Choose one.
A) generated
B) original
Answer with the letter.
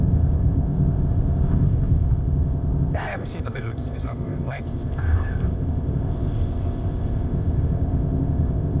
A